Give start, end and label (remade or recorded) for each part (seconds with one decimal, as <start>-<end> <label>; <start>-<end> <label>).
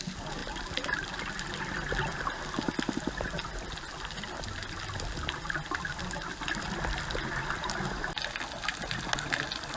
0.0-9.8 recorded